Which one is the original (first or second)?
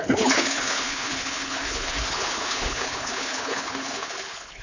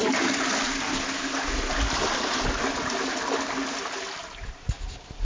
second